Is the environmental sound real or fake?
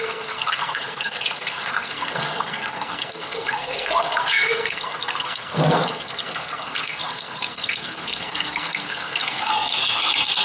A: fake